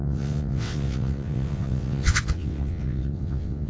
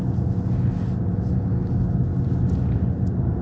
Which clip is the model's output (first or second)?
first